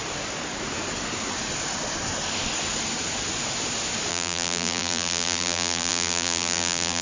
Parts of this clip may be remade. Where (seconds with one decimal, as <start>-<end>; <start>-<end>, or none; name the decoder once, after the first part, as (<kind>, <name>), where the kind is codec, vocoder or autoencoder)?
4.1-7.0 (vocoder, BigVGAN v2)